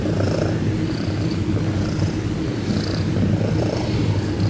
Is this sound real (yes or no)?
yes